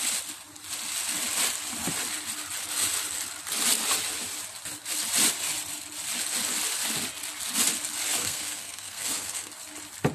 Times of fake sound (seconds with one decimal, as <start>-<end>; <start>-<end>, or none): 8.2-9.5

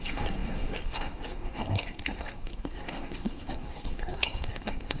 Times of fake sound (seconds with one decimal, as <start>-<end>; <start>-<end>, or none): 0.0-5.0

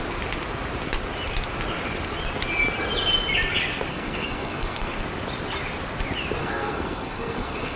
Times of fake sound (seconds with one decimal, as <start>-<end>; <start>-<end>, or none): 3.9-5.0; 6.4-7.8

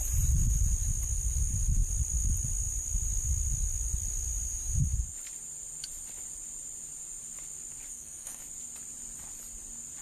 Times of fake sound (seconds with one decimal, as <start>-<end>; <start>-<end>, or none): 7.9-8.4

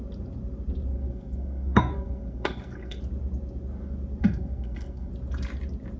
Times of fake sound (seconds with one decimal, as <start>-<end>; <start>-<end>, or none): 0.9-3.0; 4.2-5.1

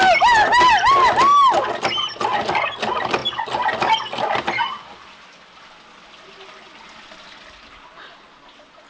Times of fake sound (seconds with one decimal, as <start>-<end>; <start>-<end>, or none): none

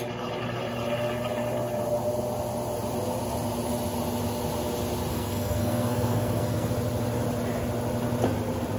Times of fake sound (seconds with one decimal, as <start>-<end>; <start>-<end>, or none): 5.1-6.7

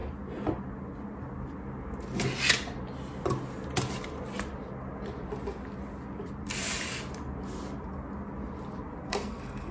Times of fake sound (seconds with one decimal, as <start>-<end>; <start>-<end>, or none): 9.0-9.7